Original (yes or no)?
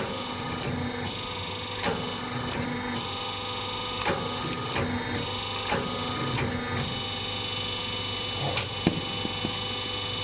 yes